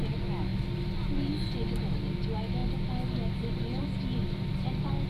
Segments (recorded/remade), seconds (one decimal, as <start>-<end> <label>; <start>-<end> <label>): 0.0-5.1 recorded